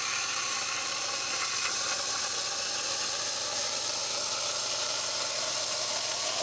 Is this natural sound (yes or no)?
yes